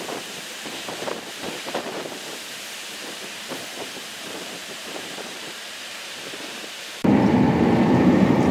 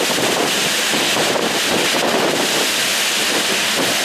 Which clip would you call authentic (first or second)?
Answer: second